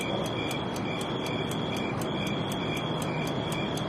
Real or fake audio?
real